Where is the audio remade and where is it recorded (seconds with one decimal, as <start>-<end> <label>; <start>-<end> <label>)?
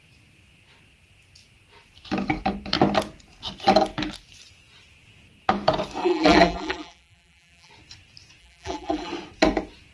0.0-6.0 recorded; 6.0-7.7 remade; 7.7-8.4 recorded; 8.4-9.1 remade; 9.1-9.9 recorded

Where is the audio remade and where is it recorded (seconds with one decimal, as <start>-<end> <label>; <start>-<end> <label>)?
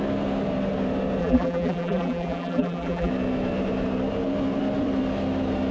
0.0-1.2 recorded; 1.2-3.1 remade; 3.1-5.7 recorded